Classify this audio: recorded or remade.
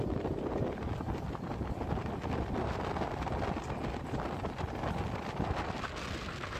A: recorded